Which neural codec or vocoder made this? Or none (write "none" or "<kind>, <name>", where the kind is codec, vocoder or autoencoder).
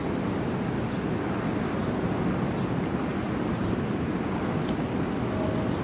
none